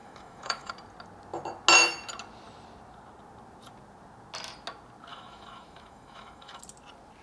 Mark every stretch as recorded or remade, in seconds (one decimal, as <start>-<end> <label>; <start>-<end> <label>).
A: 0.0-0.7 remade; 0.7-5.1 recorded; 5.1-6.6 remade; 6.6-7.2 recorded